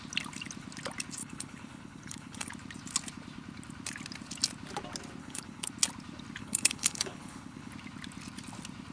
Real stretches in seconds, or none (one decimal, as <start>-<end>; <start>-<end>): 0.0-1.2; 2.5-5.2; 5.7-6.4; 7.7-8.9